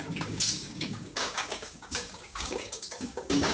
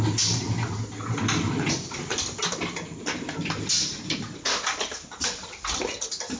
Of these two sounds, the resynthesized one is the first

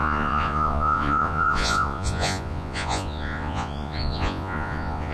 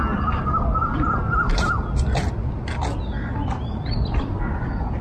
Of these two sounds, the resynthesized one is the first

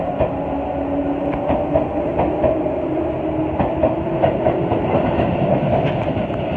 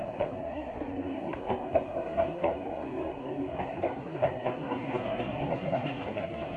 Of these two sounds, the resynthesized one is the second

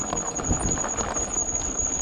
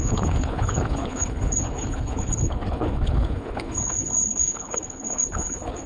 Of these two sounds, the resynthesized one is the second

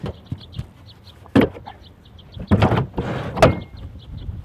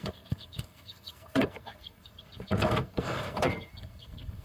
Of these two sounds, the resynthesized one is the second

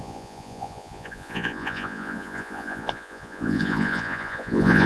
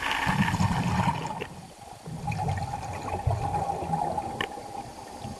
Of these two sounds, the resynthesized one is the first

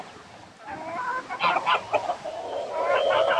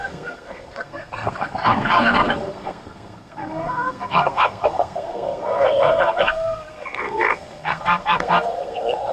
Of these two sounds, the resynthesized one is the second